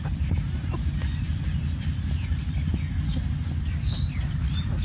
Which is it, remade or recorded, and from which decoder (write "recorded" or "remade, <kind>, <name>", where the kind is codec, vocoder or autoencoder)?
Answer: recorded